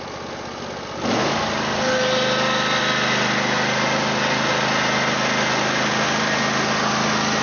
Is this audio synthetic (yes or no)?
no